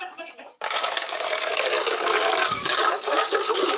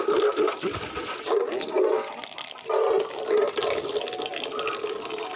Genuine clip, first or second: second